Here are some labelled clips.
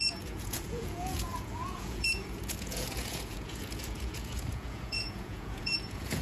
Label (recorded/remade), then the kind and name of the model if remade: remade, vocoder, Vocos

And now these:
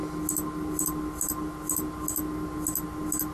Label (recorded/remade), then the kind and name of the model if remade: recorded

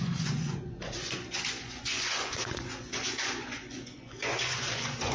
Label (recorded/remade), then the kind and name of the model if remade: remade, vocoder, Vocos